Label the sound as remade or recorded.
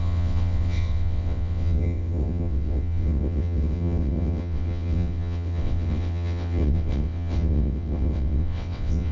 remade